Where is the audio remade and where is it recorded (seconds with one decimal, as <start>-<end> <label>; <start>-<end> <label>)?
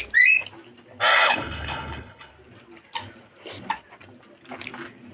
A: 0.0-1.1 recorded; 1.1-2.3 remade; 2.3-5.1 recorded